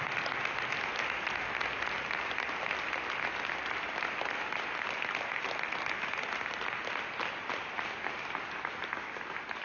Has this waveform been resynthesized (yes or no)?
no